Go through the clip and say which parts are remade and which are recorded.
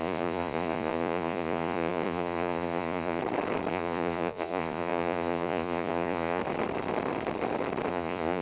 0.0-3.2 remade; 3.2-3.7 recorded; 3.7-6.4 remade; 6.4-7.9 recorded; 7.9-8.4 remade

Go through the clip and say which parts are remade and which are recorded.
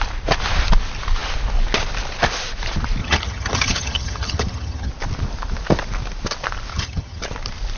0.0-3.0 recorded; 3.0-4.9 remade; 4.9-6.7 recorded; 6.7-7.2 remade; 7.2-7.8 recorded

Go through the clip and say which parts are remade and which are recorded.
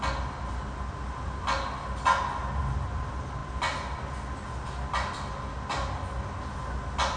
0.0-7.2 recorded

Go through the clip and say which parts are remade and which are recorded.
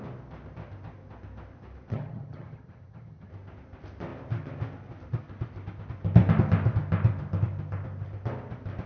0.0-1.9 recorded; 1.9-3.3 remade; 3.3-8.9 recorded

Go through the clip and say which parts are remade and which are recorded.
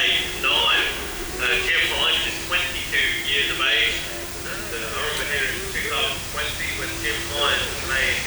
0.0-0.6 recorded; 0.6-1.3 remade; 1.3-8.3 recorded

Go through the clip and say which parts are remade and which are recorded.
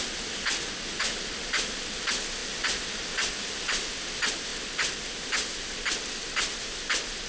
0.0-7.3 recorded